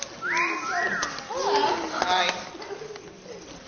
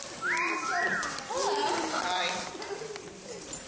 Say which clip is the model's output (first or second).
second